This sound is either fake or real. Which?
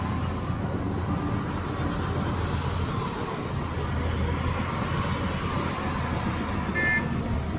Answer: real